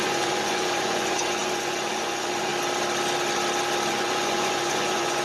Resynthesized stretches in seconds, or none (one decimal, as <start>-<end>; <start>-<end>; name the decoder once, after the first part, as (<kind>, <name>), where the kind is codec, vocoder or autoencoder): 0.0-2.5 (vocoder, Vocos); 3.9-5.2